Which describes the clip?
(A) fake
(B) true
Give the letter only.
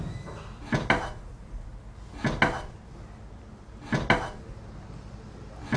B